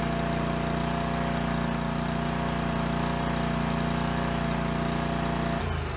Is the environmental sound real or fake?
real